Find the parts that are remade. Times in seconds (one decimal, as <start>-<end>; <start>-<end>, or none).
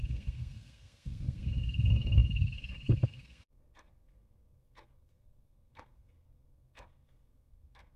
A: 0.0-8.0